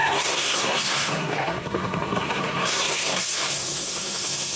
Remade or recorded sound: remade